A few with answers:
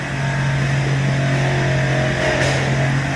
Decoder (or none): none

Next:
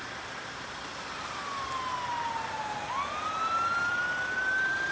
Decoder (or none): none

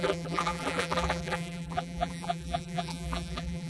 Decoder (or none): vocoder, BigVGAN v2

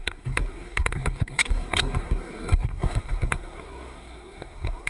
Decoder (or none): codec, SNAC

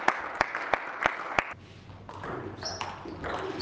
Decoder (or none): none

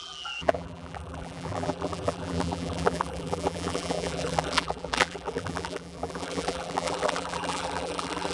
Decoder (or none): vocoder, BigVGAN v2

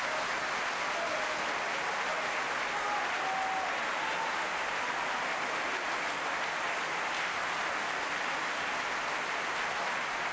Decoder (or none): none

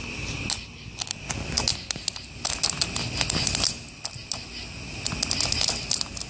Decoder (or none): none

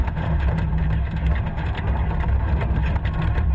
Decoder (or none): vocoder, BigVGAN v2